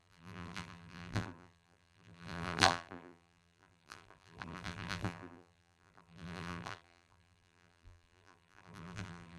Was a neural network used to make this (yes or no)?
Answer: yes